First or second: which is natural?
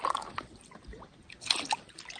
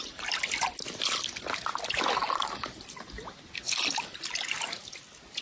second